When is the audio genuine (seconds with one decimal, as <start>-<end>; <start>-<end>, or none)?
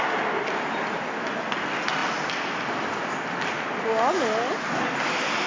0.0-5.5